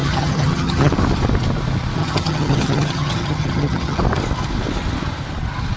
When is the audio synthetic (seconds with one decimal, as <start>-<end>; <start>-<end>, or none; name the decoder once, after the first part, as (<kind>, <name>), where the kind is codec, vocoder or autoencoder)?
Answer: 0.0-0.9 (vocoder, HiFi-GAN); 2.0-4.0